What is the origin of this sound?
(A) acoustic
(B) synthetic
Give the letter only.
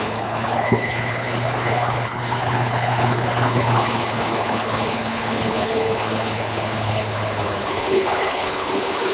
B